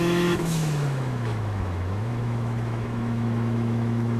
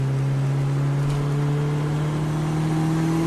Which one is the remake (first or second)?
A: first